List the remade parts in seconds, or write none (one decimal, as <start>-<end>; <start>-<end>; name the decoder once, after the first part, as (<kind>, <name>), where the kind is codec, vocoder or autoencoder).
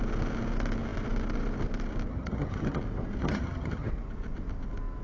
2.1-2.8 (vocoder, HiFi-GAN); 3.2-3.9